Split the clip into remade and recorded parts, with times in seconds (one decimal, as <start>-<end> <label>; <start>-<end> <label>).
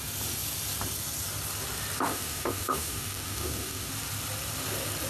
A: 0.0-2.1 recorded; 2.1-3.9 remade; 3.9-5.1 recorded